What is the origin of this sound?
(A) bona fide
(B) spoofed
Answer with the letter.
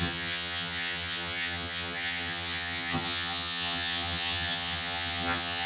B